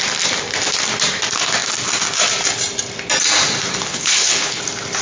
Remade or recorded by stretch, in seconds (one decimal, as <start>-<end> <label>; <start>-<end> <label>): 0.0-3.9 recorded; 3.9-4.6 remade; 4.6-5.0 recorded